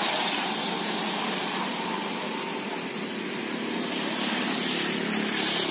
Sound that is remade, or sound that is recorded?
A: recorded